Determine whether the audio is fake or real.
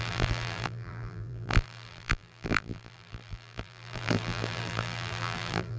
fake